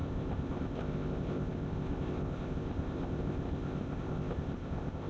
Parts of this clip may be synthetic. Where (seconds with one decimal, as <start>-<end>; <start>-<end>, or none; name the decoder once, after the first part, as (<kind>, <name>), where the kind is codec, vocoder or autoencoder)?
0.0-5.1 (codec, ZipCodec)